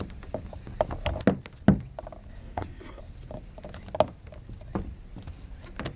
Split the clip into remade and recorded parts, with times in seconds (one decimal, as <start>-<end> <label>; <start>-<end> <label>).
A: 0.0-2.3 recorded; 2.3-3.0 remade; 3.0-6.0 recorded